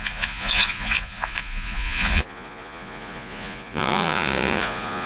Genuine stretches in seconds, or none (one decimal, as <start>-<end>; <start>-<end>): none